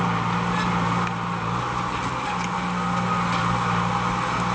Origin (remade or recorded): recorded